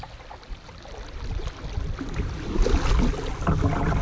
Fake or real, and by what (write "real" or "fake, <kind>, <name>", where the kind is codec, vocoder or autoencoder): real